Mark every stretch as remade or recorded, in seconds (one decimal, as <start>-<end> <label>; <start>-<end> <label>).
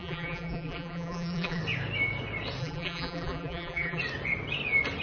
0.0-1.6 remade; 1.6-2.6 recorded; 2.6-4.0 remade; 4.0-5.0 recorded